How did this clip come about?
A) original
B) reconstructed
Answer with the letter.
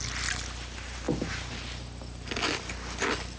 A